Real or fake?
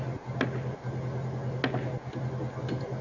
real